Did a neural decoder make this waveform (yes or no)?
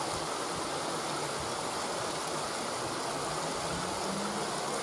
no